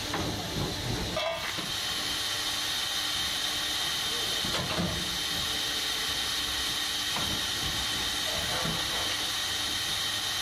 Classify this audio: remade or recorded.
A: recorded